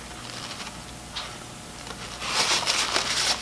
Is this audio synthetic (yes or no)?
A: no